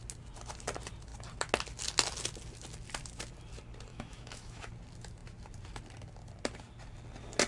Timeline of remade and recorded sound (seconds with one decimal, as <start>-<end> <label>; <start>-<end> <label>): 0.0-3.9 recorded; 3.9-4.7 remade; 4.7-7.5 recorded